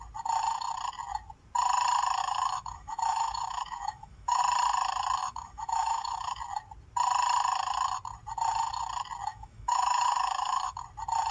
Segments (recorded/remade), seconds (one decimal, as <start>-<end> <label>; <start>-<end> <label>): 0.0-2.2 recorded; 2.2-4.4 remade; 4.4-5.2 recorded; 5.2-6.4 remade; 6.4-9.3 recorded; 9.3-10.8 remade; 10.8-11.3 recorded